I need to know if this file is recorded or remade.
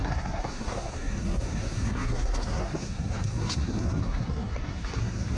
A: remade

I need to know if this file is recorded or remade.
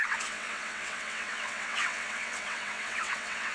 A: remade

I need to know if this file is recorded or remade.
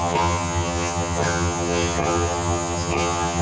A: remade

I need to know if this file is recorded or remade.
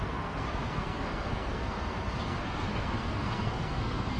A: remade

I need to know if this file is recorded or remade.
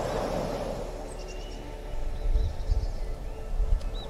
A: recorded